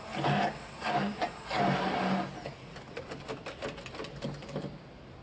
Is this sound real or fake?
real